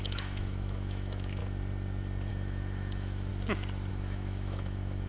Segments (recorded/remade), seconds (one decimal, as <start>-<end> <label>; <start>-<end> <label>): 0.0-1.4 remade; 1.4-2.3 recorded; 2.3-3.3 remade; 3.3-3.9 recorded; 3.9-5.1 remade